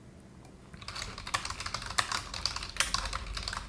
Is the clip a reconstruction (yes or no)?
no